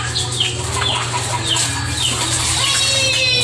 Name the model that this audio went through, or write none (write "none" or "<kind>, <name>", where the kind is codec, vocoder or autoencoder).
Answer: none